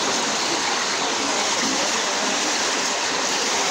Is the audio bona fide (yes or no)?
no